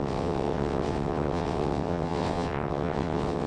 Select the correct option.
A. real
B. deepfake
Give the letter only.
B